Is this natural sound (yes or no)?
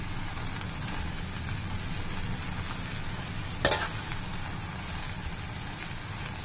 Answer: yes